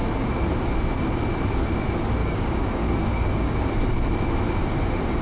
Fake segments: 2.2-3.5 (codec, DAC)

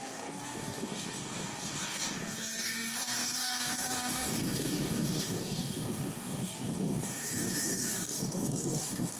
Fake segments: 0.0-9.2 (codec, DAC)